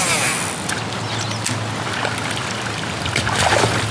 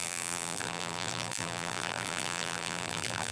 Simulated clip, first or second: second